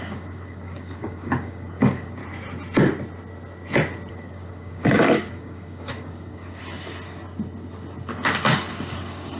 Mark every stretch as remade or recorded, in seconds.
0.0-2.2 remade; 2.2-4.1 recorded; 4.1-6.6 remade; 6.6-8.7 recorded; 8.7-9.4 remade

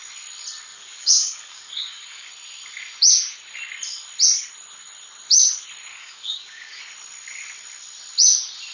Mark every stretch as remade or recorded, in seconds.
0.0-0.7 recorded; 0.7-2.3 remade; 2.3-5.9 recorded; 5.9-6.8 remade; 6.8-8.7 recorded